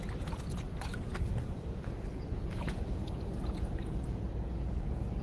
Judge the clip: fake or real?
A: fake